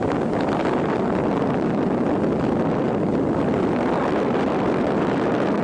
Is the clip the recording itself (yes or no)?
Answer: yes